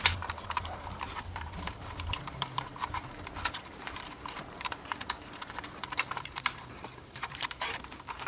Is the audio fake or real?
fake